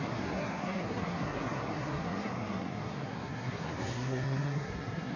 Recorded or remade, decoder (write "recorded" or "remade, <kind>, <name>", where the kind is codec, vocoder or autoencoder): remade, codec, SNAC